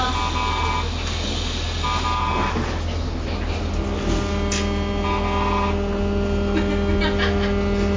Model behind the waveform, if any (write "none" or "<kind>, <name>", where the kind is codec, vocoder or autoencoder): none